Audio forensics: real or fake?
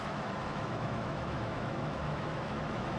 fake